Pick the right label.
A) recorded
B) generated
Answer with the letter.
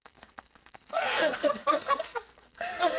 B